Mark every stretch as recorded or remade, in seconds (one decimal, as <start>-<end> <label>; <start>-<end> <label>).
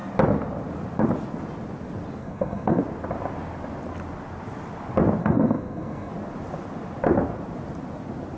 0.0-2.2 recorded; 2.2-2.8 remade; 2.8-5.2 recorded; 5.2-6.1 remade; 6.1-8.4 recorded